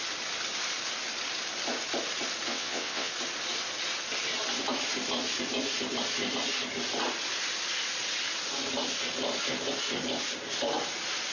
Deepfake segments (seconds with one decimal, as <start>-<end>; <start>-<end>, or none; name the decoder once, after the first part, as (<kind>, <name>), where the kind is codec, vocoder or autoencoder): 2.5-3.1 (vocoder, WaveNeXt)